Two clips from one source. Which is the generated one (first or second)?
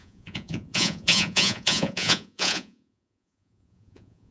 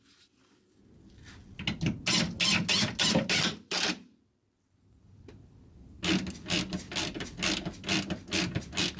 first